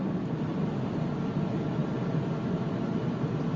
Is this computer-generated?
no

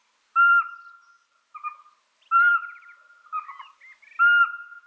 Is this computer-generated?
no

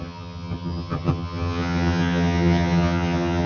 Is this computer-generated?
yes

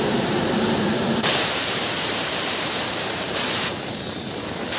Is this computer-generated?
yes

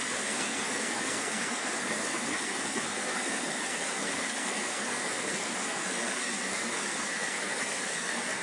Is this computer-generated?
yes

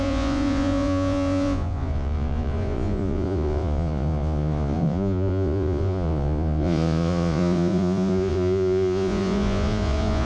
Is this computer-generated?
yes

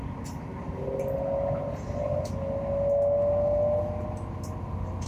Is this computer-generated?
no